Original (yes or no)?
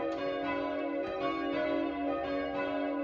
yes